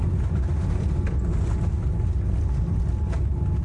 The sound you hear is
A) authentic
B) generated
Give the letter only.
A